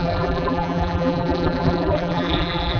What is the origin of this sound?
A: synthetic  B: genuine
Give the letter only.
A